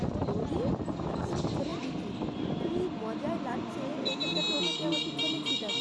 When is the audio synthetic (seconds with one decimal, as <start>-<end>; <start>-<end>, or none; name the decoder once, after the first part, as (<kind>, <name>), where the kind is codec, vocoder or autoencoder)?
0.0-3.9 (vocoder, BigVGAN v2); 5.0-5.8